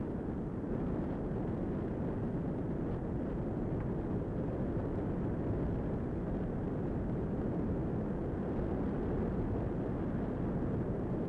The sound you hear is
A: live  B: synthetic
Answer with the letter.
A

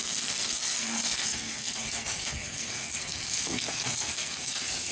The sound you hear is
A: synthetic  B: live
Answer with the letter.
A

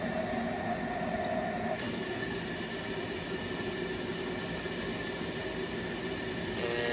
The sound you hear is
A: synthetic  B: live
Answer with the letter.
B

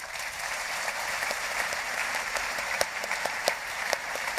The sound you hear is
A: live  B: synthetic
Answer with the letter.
B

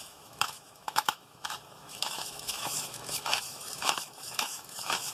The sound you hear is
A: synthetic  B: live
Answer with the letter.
A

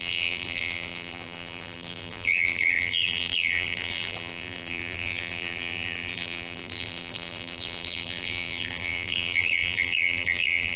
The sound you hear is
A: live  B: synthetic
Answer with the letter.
B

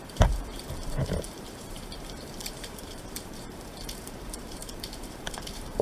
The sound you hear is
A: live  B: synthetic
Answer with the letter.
B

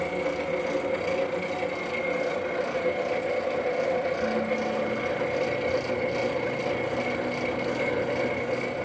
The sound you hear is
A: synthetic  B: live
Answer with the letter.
B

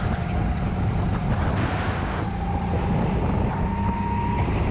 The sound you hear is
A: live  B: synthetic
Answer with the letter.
A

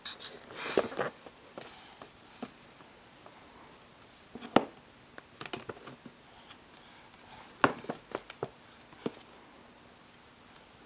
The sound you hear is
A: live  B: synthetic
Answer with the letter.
A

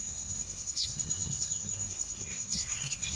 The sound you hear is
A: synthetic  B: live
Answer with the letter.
A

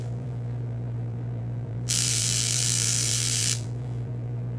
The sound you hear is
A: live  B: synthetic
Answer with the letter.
B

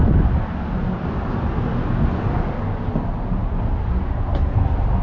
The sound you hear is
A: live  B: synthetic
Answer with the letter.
A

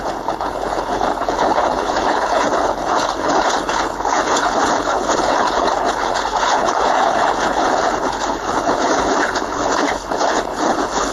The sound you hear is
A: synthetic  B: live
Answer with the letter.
A